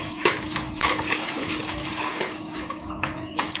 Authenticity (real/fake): fake